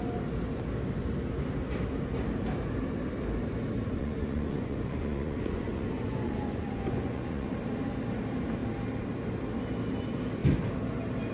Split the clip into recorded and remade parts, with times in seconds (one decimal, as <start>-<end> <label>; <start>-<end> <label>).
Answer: 0.0-3.9 recorded; 3.9-7.5 remade; 7.5-11.3 recorded